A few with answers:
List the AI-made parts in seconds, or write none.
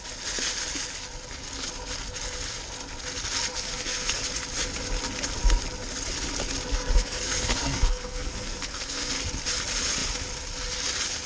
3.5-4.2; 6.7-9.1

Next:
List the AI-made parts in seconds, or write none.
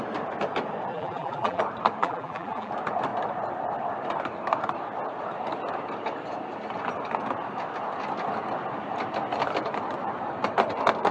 0.9-1.6; 2.0-2.7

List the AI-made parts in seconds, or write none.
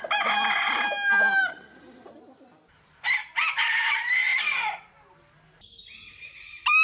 none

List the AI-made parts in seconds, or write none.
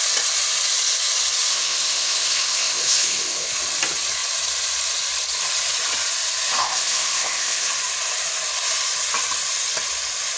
1.5-3.6; 6.6-7.7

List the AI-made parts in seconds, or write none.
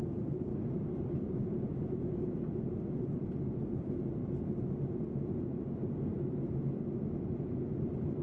0.5-3.4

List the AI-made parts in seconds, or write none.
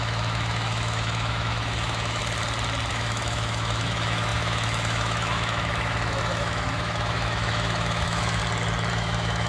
0.0-2.2; 2.9-8.4; 8.9-9.5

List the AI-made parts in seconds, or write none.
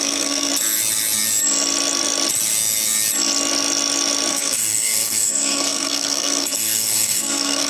0.0-0.5; 4.3-7.7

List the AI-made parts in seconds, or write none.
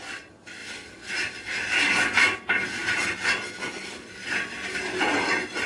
none